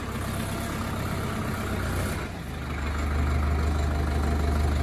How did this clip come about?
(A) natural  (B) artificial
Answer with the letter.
A